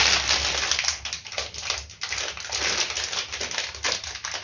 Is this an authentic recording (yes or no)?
yes